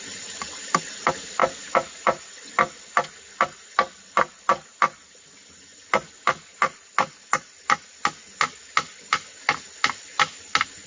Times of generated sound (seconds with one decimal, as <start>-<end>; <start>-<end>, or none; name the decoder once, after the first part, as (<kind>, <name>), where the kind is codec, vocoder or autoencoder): none